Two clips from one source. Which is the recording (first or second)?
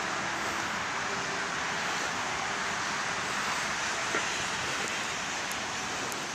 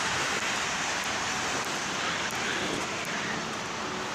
first